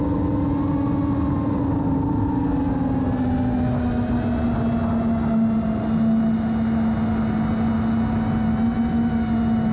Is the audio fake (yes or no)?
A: no